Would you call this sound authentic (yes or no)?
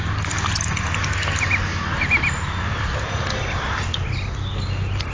yes